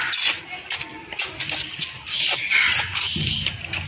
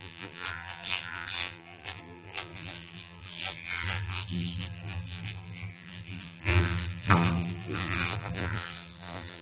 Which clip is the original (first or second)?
first